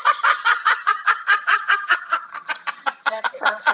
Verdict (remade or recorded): remade